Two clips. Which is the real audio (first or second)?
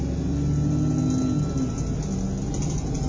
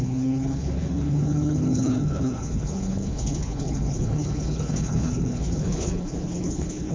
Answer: first